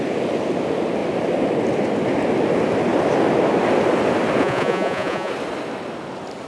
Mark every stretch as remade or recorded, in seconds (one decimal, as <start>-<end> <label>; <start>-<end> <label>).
0.0-4.4 recorded; 4.4-5.3 remade; 5.3-6.5 recorded